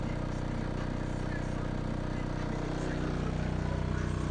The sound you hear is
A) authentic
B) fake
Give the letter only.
A